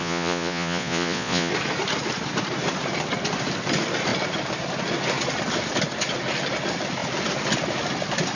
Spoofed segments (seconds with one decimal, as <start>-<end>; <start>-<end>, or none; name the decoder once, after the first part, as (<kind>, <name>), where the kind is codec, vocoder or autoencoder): 0.0-1.5 (vocoder, Vocos)